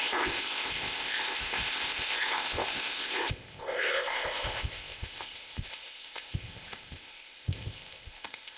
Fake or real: fake